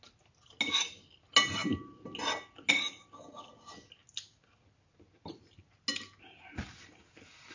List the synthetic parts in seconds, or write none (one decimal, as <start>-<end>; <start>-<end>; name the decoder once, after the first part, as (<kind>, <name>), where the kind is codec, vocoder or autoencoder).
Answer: none